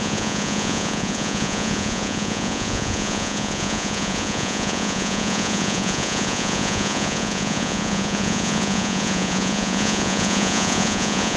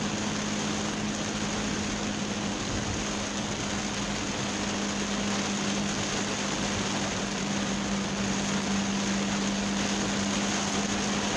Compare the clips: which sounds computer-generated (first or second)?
first